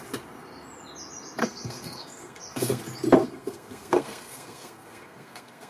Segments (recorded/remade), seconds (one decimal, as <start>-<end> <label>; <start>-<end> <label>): 0.0-1.4 recorded; 1.4-2.8 remade; 2.8-3.2 recorded; 3.2-5.7 remade